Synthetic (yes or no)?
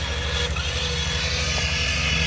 no